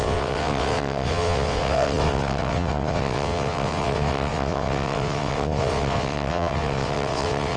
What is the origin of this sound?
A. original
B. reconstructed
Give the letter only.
B